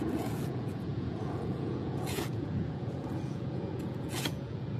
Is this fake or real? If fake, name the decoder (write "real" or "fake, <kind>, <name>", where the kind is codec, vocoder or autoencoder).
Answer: fake, vocoder, Vocos